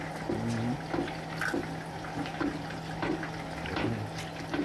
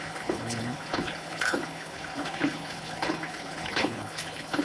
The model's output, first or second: second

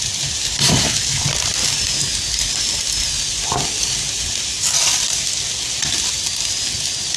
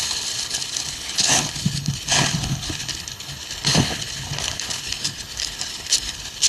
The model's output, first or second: second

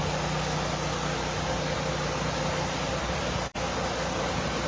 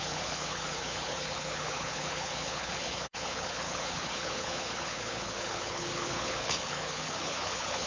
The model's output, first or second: second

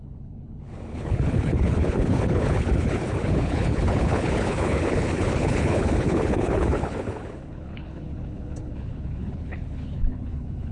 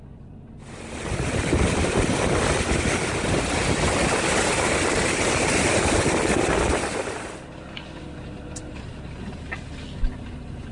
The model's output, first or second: first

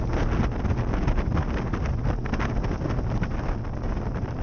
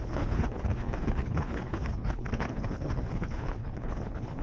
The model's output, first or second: second